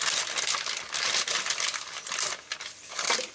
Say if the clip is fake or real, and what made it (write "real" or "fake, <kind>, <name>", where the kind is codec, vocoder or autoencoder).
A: real